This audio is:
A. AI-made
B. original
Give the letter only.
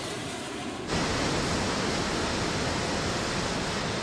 B